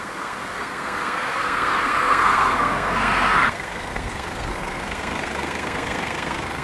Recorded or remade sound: remade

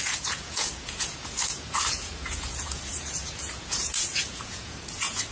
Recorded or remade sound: remade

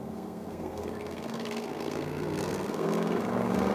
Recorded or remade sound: remade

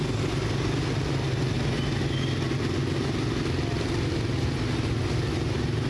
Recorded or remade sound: recorded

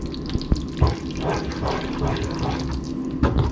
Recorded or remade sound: recorded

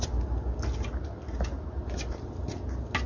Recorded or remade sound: recorded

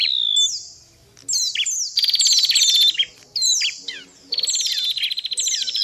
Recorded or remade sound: recorded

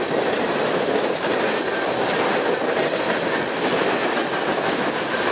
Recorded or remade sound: recorded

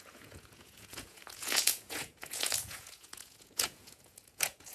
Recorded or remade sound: remade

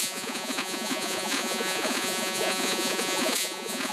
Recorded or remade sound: remade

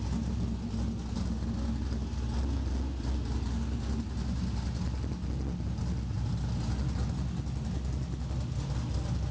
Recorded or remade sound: recorded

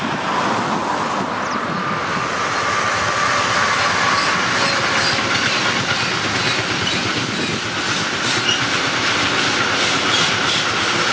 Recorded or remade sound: recorded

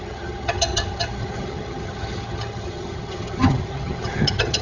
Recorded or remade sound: remade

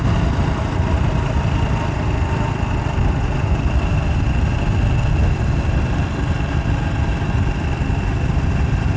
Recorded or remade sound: recorded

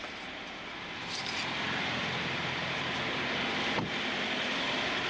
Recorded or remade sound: remade